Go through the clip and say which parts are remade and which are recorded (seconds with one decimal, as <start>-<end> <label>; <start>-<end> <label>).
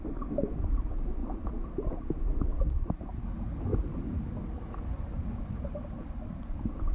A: 0.0-6.9 recorded